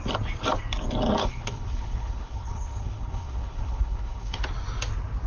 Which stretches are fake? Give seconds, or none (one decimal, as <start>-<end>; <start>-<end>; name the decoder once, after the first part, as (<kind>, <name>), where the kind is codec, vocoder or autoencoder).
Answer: 1.2-4.4 (codec, HILCodec)